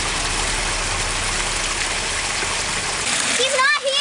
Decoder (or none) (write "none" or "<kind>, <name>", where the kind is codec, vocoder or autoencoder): none